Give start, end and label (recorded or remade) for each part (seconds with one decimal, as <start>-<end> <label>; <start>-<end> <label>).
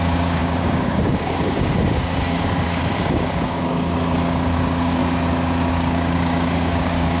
0.0-5.0 remade; 5.0-5.7 recorded; 5.7-7.2 remade